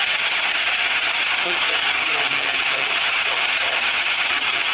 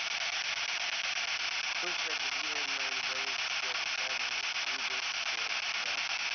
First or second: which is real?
second